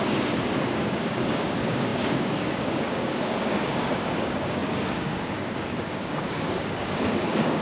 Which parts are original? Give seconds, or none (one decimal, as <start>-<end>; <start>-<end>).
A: none